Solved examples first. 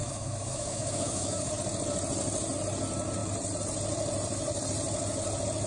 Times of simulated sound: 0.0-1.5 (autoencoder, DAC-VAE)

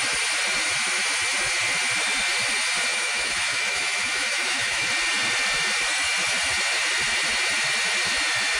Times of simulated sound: 2.9-4.9 (autoencoder, DAC-VAE)

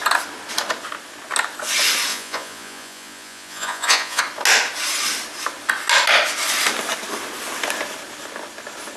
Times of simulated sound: 2.1-4.2 (vocoder, Vocos)